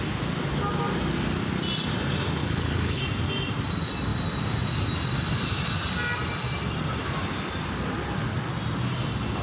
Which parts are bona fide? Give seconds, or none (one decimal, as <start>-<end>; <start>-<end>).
0.0-2.4; 3.0-9.4